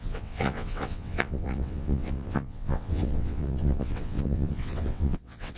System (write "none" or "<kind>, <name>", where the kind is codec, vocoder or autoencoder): vocoder, WaveNeXt